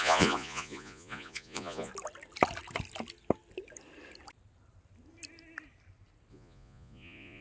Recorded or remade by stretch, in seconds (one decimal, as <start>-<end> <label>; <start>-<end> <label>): 0.0-1.9 remade; 1.9-6.3 recorded; 6.3-7.4 remade